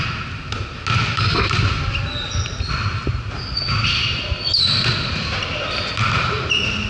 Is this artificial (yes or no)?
no